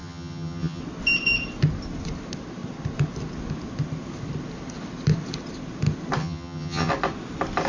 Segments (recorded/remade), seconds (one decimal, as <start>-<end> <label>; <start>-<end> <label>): 0.0-0.8 remade; 0.8-6.2 recorded; 6.2-6.9 remade; 6.9-7.7 recorded

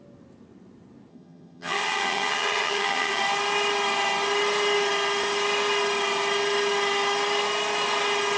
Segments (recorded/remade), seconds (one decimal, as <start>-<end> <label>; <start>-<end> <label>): 0.0-1.1 recorded; 1.1-3.2 remade; 3.2-8.4 recorded

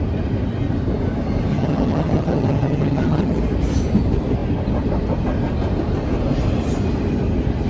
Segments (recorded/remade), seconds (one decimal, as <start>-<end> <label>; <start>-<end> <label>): 0.0-1.5 recorded; 1.5-3.4 remade; 3.4-7.7 recorded

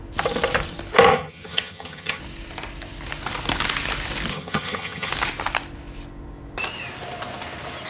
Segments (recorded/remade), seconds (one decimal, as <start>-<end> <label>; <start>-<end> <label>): 0.0-1.1 recorded; 1.1-2.2 remade; 2.2-4.3 recorded; 4.3-5.1 remade; 5.1-7.9 recorded

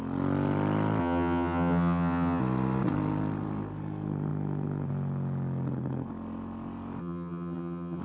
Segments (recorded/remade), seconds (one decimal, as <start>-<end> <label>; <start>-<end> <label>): 0.0-1.0 recorded; 1.0-2.4 remade; 2.4-7.0 recorded; 7.0-8.0 remade